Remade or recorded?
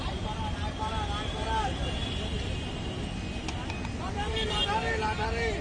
recorded